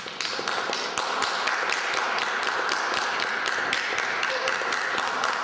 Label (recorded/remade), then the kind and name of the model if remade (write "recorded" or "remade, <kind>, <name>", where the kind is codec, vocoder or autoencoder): recorded